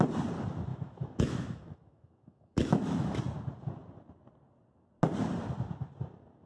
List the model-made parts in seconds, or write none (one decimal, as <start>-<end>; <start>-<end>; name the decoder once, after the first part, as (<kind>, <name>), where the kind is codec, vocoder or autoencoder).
0.7-3.2 (autoencoder, DAC-VAE)